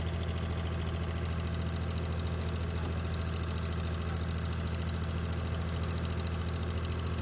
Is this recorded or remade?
recorded